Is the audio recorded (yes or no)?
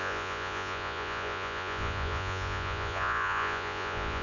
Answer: no